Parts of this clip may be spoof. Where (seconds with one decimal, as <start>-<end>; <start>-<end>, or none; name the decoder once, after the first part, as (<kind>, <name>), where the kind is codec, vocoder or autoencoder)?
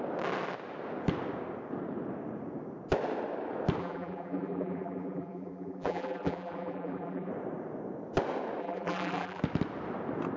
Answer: 3.8-7.3 (vocoder, BigVGAN v2); 8.6-9.4